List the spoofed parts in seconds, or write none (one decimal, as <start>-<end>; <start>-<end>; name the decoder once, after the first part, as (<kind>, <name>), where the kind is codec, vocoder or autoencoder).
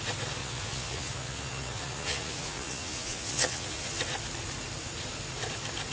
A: 0.4-3.9 (vocoder, Vocos)